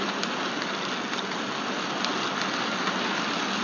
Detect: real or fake real